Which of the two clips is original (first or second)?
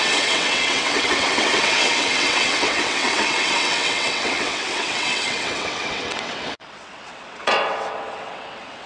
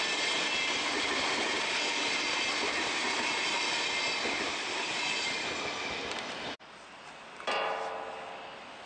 second